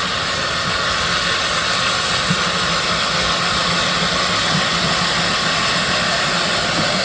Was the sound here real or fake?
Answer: real